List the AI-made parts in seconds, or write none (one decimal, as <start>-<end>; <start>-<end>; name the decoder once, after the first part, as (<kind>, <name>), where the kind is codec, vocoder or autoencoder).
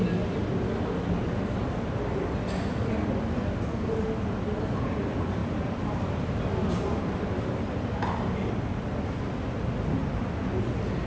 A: none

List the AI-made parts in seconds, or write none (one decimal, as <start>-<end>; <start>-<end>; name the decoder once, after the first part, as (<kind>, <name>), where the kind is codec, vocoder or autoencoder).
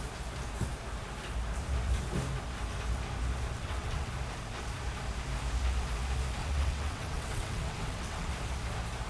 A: 3.6-4.1 (vocoder, WaveNeXt); 6.4-8.3